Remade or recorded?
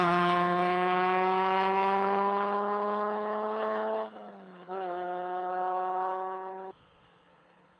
remade